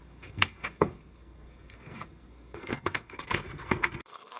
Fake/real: fake